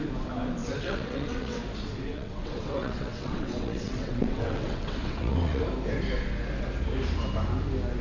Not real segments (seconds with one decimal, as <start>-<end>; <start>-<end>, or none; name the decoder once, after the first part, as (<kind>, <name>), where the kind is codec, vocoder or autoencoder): 0.6-1.6 (vocoder, WaveNeXt); 2.1-5.6